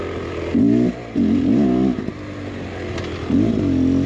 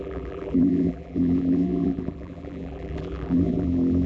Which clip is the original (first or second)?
first